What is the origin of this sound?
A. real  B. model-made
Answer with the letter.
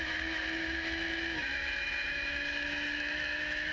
B